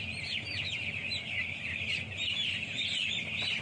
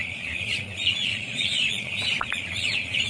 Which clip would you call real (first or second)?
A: first